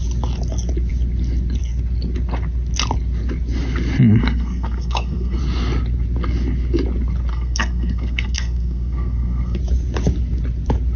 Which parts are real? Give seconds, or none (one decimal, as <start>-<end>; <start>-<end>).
0.0-4.2; 5.4-7.3; 9.6-11.0